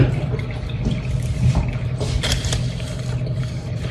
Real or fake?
real